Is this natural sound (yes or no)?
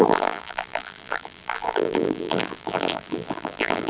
no